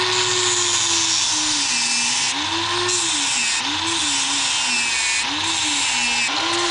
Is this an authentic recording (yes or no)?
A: yes